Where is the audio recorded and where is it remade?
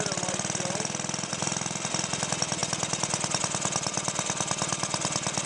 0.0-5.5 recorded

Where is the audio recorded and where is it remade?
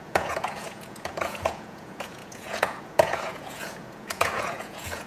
0.0-5.1 remade